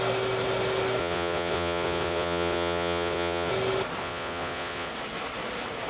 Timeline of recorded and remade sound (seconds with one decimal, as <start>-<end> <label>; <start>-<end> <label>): 0.0-1.0 recorded; 1.0-3.5 remade; 3.5-4.0 recorded; 4.0-4.9 remade; 4.9-5.9 recorded